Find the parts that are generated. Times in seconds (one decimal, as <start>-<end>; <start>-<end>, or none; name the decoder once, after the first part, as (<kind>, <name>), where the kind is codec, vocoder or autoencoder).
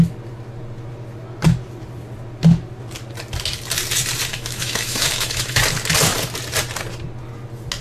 4.3-5.6 (autoencoder, DAC-VAE)